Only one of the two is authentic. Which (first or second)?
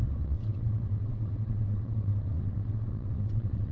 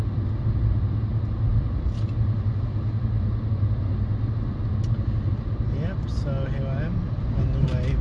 second